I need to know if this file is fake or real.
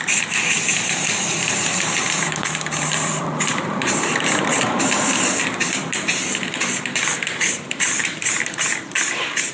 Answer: fake